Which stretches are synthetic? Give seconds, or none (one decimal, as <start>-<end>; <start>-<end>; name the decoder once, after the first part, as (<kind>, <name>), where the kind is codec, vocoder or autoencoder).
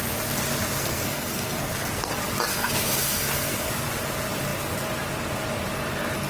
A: 0.8-2.1 (codec, SNAC); 2.5-3.7